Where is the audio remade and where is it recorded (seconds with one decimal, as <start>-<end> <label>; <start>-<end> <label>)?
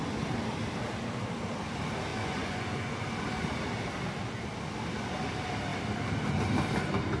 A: 0.0-2.1 recorded; 2.1-3.0 remade; 3.0-7.2 recorded